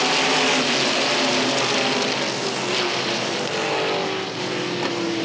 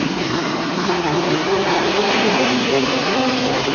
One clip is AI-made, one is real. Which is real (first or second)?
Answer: first